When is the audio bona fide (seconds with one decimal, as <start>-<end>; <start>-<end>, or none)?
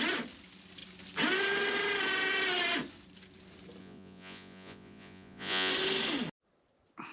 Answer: 0.0-3.8; 5.7-7.1